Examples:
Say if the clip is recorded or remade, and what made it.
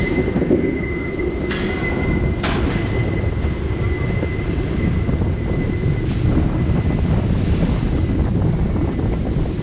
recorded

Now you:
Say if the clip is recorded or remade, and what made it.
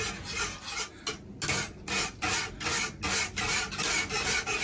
recorded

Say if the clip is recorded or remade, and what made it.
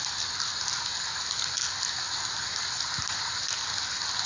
recorded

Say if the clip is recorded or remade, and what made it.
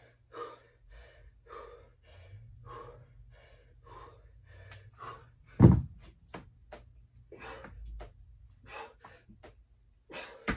recorded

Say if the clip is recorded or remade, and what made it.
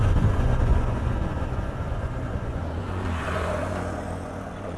remade, vocoder, Vocos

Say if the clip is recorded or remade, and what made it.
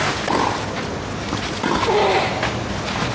recorded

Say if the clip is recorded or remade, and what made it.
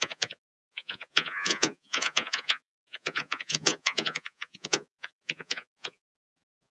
remade, vocoder, Vocos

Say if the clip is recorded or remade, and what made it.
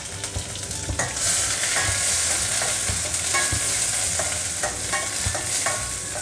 recorded